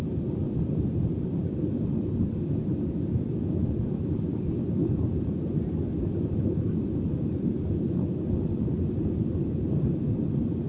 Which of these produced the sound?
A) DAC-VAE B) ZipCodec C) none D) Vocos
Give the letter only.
C